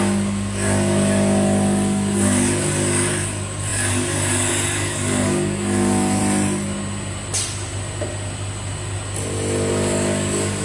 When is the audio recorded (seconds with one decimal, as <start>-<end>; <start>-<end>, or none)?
6.2-9.7